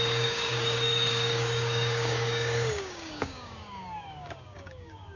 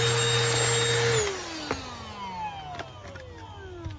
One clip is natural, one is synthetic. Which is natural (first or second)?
second